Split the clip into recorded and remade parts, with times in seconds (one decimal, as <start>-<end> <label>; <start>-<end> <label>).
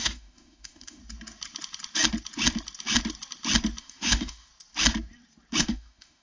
0.0-1.0 remade; 1.0-3.8 recorded; 3.8-4.5 remade; 4.5-5.6 recorded; 5.6-6.2 remade